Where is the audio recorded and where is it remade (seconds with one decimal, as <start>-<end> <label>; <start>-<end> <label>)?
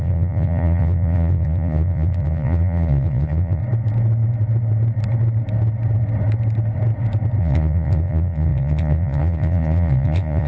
0.0-3.6 remade; 3.6-7.4 recorded; 7.4-10.5 remade